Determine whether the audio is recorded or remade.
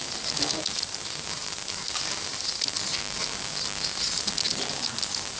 recorded